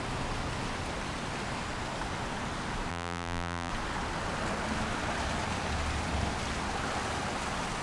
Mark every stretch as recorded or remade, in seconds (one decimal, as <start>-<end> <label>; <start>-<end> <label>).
0.0-2.9 recorded; 2.9-3.7 remade; 3.7-7.8 recorded